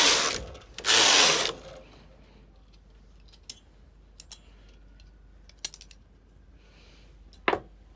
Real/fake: real